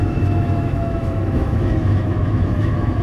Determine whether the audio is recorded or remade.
remade